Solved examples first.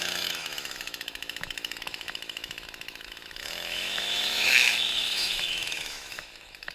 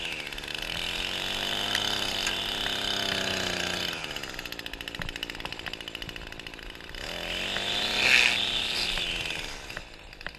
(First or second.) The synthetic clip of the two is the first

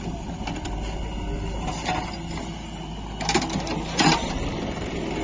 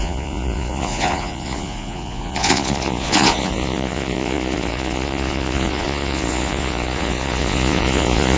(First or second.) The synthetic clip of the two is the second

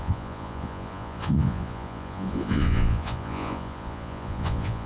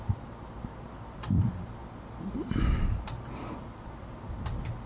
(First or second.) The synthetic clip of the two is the first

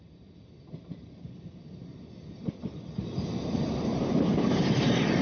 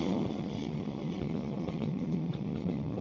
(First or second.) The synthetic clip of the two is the second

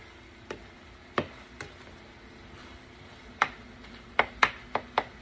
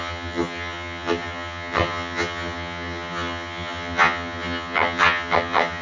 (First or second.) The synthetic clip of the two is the second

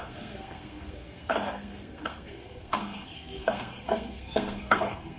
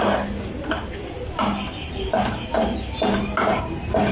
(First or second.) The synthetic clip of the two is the first